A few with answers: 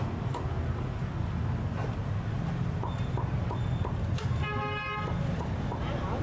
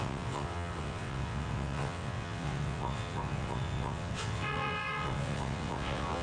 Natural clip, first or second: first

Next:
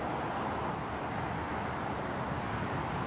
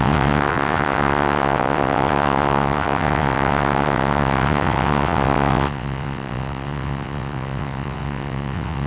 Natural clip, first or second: first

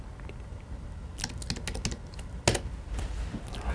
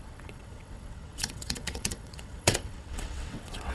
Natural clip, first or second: first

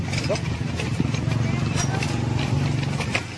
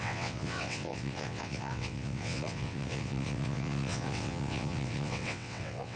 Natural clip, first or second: first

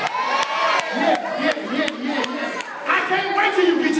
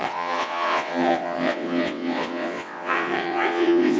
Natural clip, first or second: first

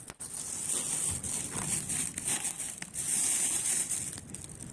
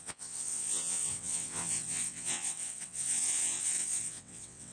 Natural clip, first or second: first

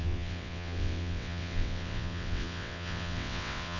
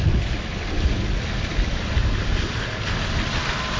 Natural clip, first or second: second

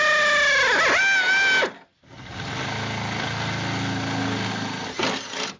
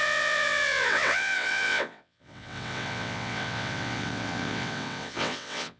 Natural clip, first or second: first